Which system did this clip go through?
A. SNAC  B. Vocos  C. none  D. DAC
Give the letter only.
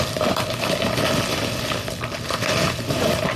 C